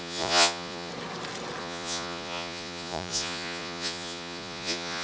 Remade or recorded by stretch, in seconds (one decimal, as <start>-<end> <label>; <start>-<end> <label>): 0.0-0.9 remade; 0.9-1.6 recorded; 1.6-5.0 remade